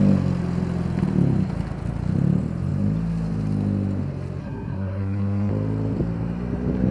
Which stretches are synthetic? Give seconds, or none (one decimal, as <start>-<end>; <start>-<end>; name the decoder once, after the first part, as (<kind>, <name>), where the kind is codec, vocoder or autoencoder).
4.4-5.5 (codec, SNAC)